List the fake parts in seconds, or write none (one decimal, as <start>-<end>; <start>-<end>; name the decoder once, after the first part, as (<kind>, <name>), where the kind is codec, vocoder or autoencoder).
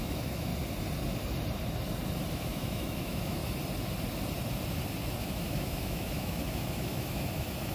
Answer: 0.0-0.5 (autoencoder, DAC-VAE); 2.3-3.4; 5.2-7.7